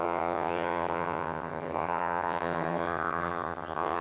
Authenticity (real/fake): fake